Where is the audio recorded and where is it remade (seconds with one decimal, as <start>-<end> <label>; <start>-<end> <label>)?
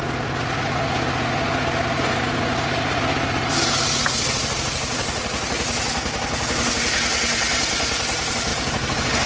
0.0-8.5 recorded; 8.5-9.3 remade